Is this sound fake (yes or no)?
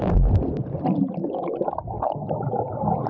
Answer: no